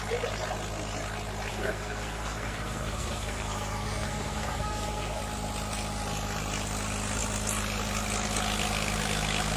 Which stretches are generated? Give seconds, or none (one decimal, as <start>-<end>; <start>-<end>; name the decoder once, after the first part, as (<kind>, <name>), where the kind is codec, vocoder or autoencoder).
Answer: 1.5-5.2 (codec, SNAC)